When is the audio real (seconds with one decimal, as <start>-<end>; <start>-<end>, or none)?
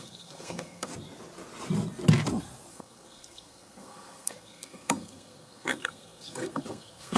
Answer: 0.9-2.7